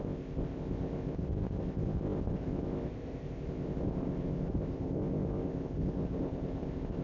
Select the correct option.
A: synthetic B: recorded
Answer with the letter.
A